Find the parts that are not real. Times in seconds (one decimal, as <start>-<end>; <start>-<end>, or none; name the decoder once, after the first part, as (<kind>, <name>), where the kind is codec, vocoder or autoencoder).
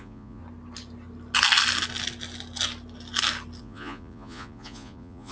0.0-0.4 (vocoder, Vocos); 3.6-5.3